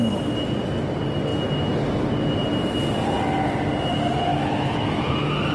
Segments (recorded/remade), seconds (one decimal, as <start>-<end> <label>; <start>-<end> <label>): 0.0-4.3 recorded; 4.3-5.0 remade; 5.0-5.5 recorded